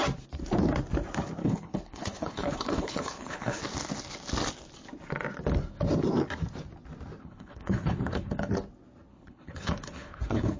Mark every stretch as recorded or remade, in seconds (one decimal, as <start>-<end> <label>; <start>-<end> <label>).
0.0-1.4 recorded; 1.4-3.6 remade; 3.6-7.2 recorded; 7.2-8.5 remade; 8.5-9.1 recorded; 9.1-10.6 remade